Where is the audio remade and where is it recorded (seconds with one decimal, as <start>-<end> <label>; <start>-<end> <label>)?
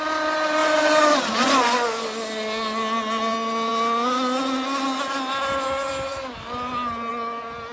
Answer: 0.0-0.6 recorded; 0.6-1.7 remade; 1.7-7.7 recorded